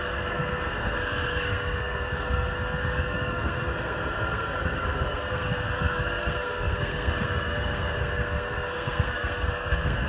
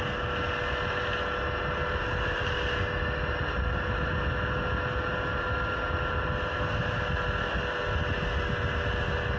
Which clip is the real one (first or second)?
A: second